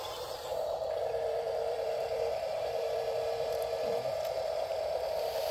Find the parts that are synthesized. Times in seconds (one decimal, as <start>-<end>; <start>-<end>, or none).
0.0-4.7